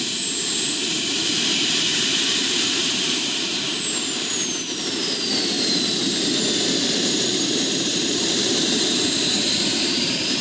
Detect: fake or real fake